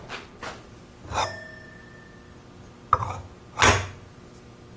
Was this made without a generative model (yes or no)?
yes